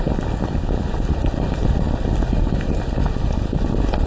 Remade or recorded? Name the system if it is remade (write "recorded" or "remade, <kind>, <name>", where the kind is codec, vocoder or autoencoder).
recorded